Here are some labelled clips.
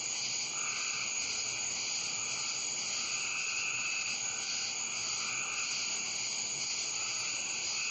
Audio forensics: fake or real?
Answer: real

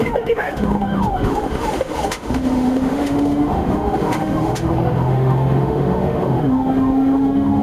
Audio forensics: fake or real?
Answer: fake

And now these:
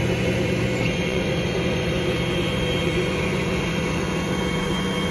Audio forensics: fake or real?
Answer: fake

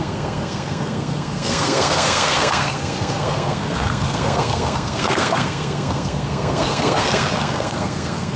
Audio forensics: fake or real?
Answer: fake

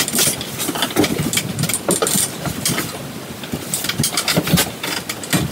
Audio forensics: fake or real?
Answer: real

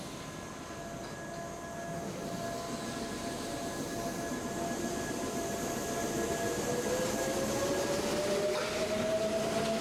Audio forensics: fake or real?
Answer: real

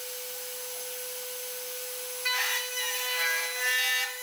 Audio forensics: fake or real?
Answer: real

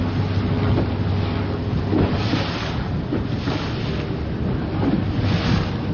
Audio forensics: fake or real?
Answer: real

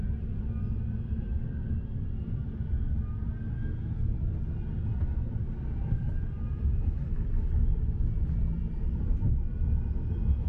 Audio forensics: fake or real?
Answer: real